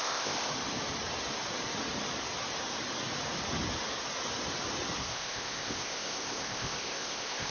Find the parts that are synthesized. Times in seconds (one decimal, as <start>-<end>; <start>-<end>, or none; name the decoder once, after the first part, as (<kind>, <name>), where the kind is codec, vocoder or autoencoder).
0.0-0.5 (codec, ZipCodec); 5.0-7.5